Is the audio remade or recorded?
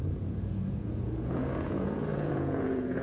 remade